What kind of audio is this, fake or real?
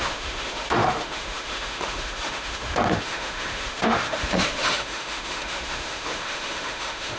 fake